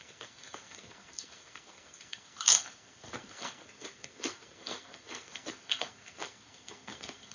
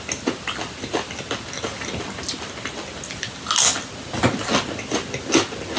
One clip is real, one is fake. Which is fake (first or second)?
first